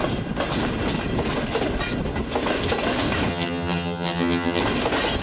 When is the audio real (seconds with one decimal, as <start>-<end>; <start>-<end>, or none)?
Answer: 0.0-3.3; 4.6-5.2